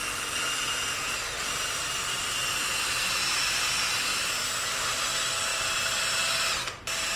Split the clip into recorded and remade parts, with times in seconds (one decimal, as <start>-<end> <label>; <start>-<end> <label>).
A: 0.0-7.2 recorded